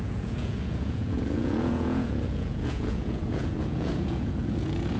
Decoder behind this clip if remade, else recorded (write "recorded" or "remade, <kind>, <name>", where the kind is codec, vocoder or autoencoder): remade, vocoder, Vocos